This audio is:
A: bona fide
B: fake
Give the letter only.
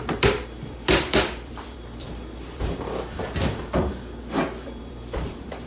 B